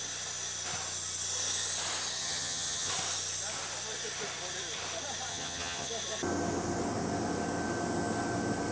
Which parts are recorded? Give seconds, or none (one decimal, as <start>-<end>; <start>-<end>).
0.0-2.2; 2.9-5.3; 5.9-8.7